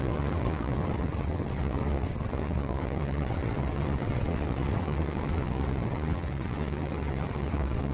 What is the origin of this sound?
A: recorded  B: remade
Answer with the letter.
B